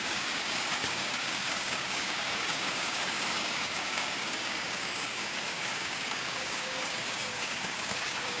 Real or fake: fake